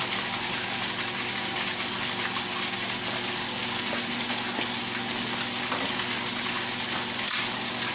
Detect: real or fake real